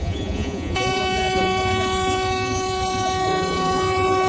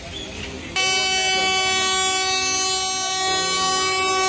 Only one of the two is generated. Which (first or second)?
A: first